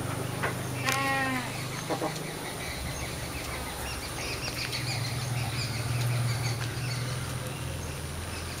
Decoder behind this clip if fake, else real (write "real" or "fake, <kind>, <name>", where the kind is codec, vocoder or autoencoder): real